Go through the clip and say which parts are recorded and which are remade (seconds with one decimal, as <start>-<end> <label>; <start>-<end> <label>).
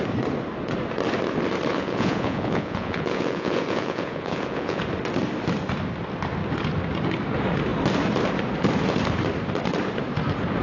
0.0-1.7 recorded; 1.7-4.8 remade; 4.8-10.6 recorded